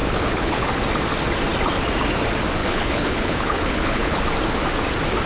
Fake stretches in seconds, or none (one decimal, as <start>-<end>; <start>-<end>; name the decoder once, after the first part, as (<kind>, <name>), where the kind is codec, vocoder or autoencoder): 0.0-0.7 (codec, HILCodec); 2.6-4.2